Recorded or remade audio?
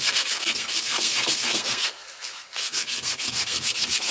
remade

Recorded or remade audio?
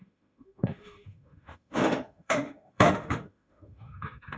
remade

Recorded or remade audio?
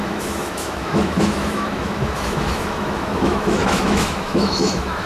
remade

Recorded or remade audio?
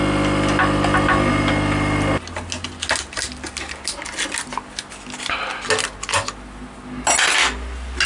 recorded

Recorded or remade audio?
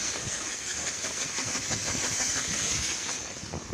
remade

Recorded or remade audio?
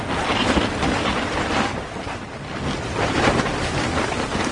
recorded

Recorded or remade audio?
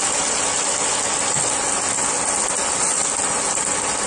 recorded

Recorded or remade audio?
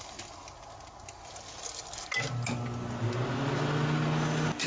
recorded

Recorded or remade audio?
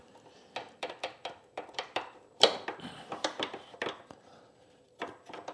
remade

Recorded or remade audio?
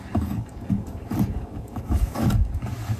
remade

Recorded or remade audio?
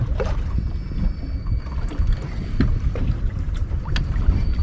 recorded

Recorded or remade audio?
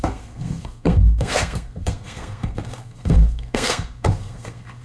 remade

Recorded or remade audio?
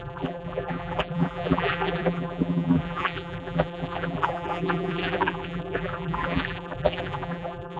remade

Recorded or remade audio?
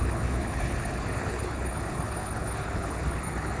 remade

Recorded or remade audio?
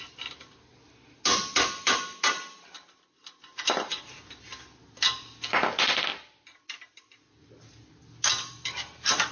recorded